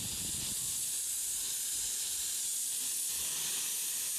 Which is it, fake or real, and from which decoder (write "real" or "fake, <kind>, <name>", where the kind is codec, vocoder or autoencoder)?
real